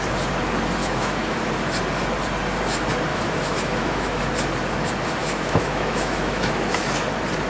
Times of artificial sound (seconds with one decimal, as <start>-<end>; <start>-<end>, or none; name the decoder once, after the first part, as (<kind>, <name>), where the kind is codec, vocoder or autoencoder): 0.8-1.5 (autoencoder, DAC-VAE); 3.1-4.2; 5.2-6.8